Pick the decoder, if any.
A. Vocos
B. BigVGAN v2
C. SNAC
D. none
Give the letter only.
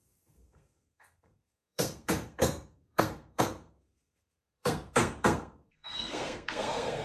C